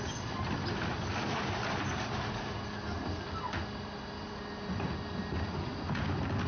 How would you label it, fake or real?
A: real